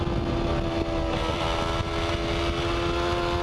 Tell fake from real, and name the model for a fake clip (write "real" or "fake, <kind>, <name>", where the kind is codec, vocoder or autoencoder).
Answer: real